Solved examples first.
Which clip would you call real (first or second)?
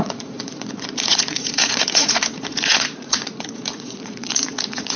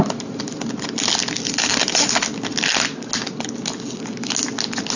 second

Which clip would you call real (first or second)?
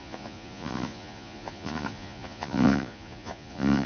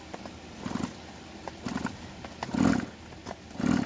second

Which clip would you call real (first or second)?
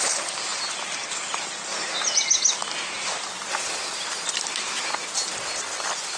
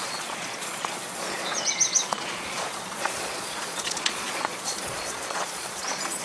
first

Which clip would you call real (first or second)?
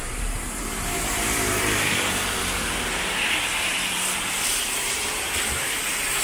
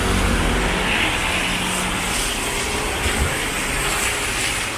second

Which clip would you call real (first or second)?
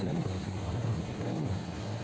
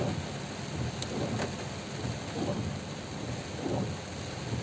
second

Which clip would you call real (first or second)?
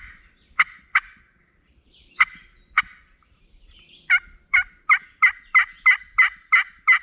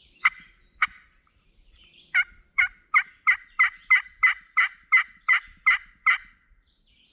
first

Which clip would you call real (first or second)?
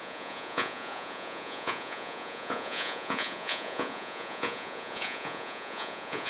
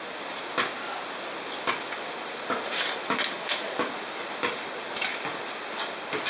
second